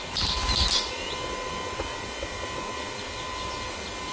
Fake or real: real